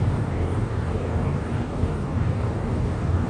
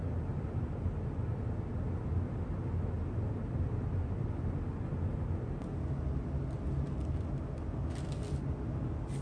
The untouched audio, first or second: second